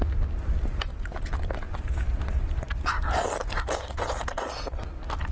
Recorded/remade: recorded